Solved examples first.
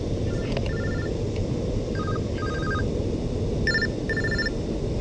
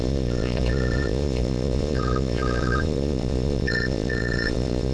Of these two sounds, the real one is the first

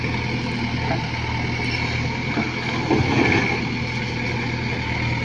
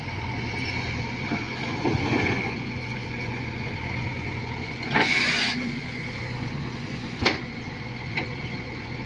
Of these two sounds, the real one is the first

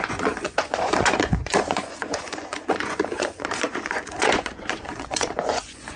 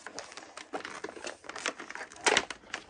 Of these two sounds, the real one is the second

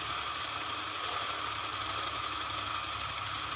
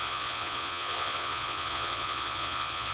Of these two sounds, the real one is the first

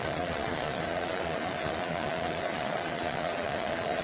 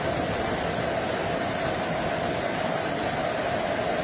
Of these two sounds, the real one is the second